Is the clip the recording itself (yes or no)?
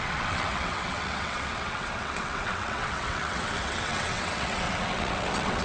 no